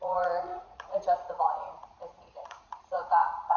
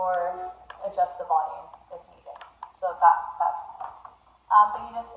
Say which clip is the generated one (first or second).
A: first